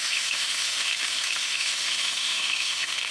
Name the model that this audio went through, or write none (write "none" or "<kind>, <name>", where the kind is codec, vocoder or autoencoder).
autoencoder, DAC-VAE